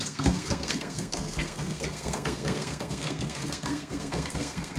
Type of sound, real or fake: fake